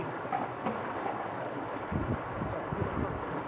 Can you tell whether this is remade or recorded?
recorded